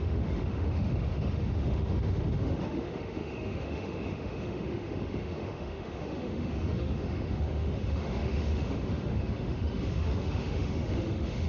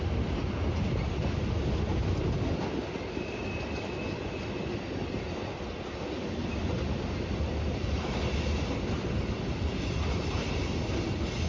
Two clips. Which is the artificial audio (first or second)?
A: first